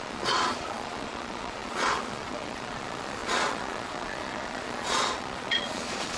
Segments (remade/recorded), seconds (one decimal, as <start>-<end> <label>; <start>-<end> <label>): 0.0-6.2 remade